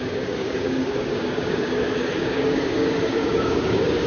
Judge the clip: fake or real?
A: fake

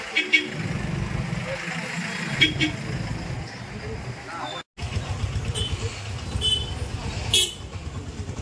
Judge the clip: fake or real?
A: real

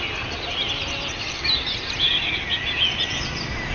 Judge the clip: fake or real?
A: real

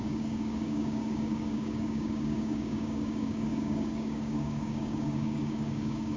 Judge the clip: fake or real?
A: fake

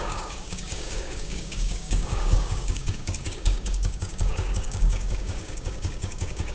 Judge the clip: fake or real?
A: fake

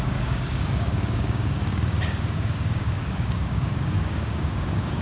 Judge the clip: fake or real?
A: fake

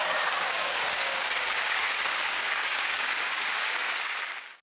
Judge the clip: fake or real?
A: fake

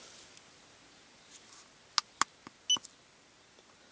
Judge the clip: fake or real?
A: real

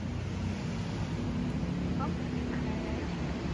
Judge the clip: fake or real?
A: real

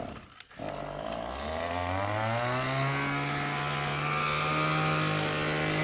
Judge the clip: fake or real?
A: real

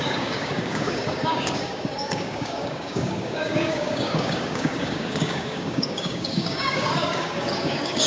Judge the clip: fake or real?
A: fake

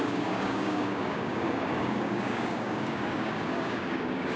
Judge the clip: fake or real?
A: fake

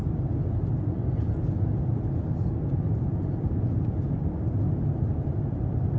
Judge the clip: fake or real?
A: real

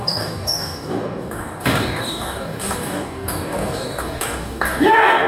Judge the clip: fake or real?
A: fake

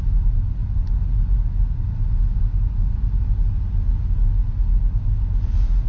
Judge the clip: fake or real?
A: real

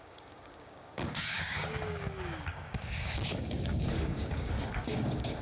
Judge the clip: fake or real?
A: fake